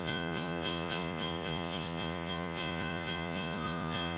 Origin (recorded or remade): remade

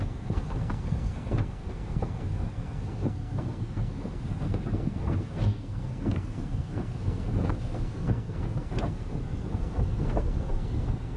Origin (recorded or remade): remade